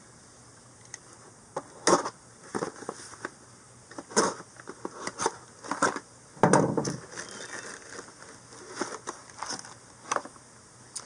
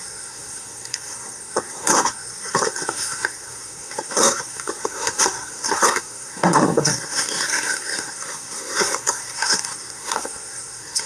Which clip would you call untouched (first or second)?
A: first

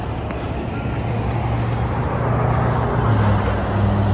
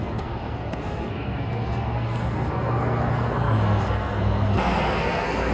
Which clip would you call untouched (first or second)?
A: first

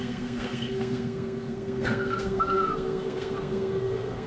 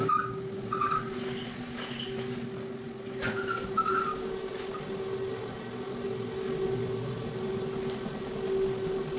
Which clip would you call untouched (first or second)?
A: second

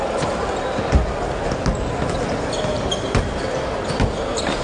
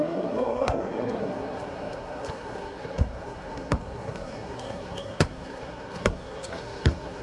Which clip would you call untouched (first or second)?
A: first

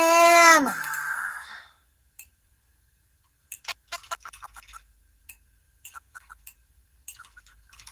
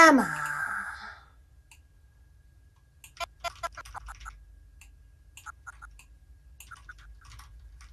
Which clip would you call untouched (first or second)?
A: second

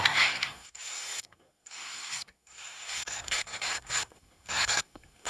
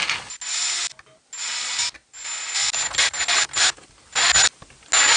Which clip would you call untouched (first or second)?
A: second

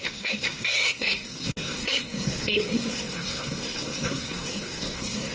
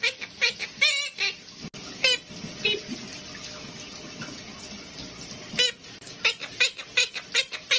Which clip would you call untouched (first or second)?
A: second